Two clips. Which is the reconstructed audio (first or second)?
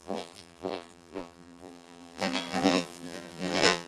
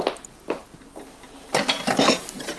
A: first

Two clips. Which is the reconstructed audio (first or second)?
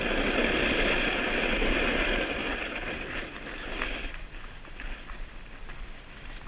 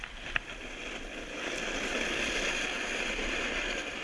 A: first